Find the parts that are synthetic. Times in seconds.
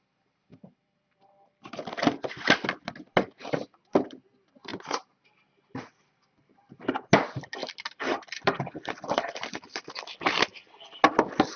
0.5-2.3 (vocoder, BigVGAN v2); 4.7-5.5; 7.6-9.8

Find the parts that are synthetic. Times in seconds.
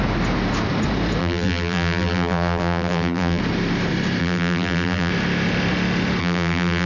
1.2-3.4 (vocoder, BigVGAN v2); 4.2-5.1; 6.2-6.9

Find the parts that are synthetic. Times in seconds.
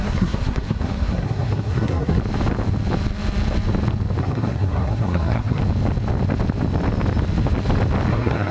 0.0-2.2 (codec, SNAC); 4.2-5.6; 8.1-8.5